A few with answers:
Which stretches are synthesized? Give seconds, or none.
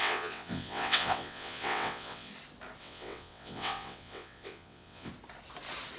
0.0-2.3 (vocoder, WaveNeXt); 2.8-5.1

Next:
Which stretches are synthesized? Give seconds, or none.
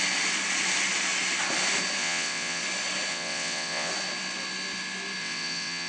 2.0-2.6 (vocoder, WaveNeXt); 3.1-3.9; 5.2-5.9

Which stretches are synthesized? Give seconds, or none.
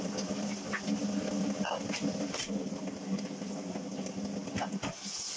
none